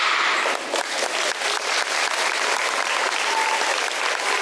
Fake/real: real